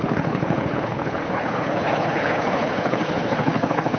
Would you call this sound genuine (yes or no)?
no